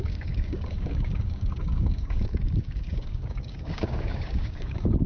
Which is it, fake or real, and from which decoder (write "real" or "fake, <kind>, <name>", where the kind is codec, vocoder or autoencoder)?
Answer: fake, codec, DAC